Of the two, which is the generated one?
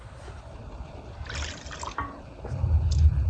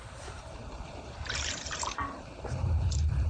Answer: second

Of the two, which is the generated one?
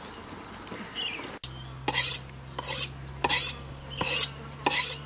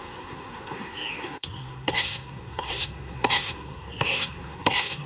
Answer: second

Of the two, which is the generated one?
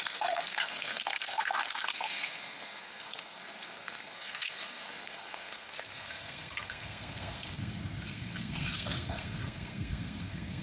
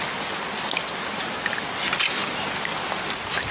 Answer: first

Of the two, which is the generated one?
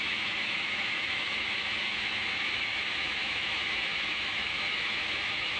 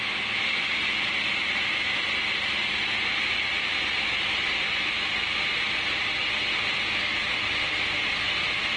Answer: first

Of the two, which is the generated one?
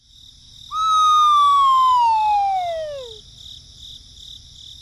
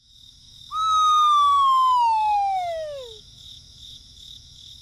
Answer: second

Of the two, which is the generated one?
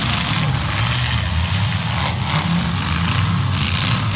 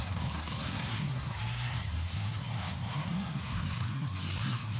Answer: second